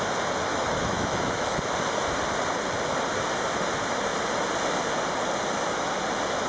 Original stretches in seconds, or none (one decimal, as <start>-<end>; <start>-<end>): 0.0-0.5; 1.6-6.5